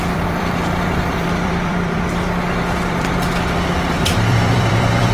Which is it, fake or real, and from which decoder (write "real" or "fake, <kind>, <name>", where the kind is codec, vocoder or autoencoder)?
fake, vocoder, BigVGAN v2